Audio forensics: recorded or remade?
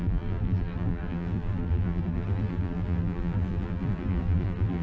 remade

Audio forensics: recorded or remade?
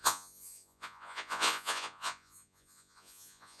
remade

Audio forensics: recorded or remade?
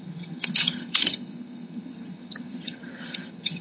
remade